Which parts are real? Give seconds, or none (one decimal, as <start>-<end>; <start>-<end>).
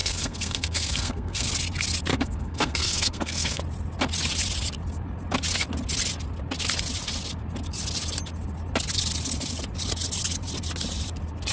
1.5-2.1; 3.6-11.5